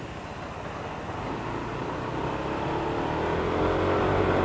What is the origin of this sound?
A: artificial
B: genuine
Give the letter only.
B